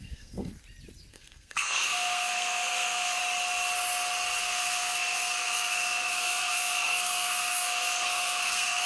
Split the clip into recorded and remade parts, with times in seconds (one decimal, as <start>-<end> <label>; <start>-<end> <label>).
0.0-0.5 remade; 0.5-1.1 recorded; 1.1-3.2 remade; 3.2-4.4 recorded; 4.4-8.9 remade